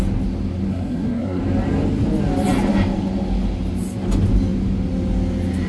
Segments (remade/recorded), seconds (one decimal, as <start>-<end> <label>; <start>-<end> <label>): 0.0-0.7 recorded; 0.7-1.4 remade; 1.4-5.7 recorded

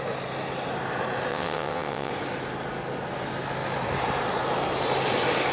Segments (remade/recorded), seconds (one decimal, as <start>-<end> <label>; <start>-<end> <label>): 0.0-1.3 recorded; 1.3-2.1 remade; 2.1-5.5 recorded

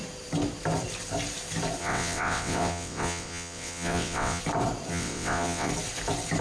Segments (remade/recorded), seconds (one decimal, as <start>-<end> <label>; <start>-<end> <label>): 0.0-1.8 recorded; 1.8-4.4 remade; 4.4-4.9 recorded; 4.9-5.7 remade; 5.7-6.4 recorded

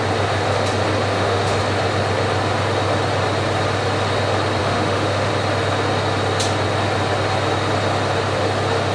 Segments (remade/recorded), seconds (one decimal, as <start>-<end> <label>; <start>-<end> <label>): 0.0-1.1 recorded; 1.1-1.6 remade; 1.6-4.6 recorded; 4.6-5.3 remade; 5.3-8.9 recorded